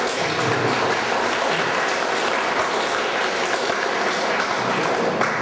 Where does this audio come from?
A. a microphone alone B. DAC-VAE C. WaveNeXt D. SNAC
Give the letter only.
A